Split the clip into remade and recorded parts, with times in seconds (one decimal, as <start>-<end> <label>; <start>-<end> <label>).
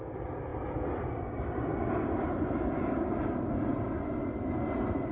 0.0-5.1 recorded